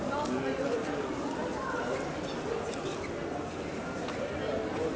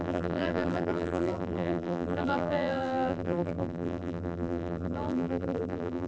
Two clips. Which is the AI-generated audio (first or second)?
second